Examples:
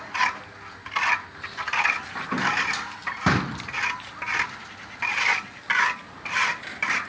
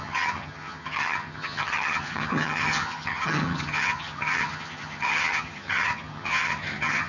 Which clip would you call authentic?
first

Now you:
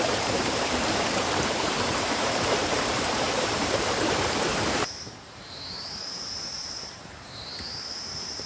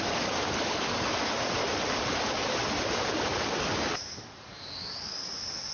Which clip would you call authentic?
second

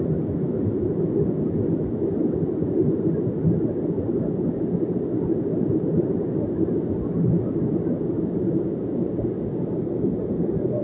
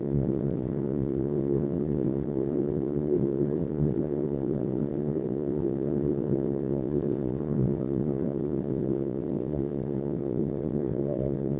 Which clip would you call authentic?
first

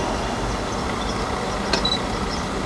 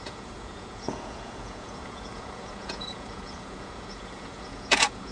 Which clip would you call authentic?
first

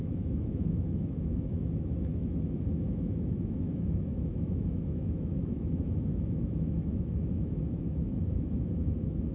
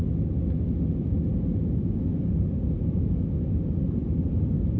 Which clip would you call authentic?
second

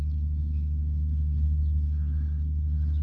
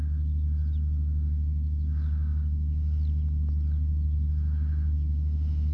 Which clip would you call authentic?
second